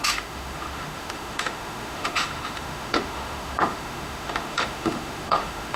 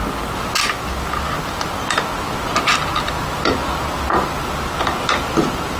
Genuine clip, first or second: second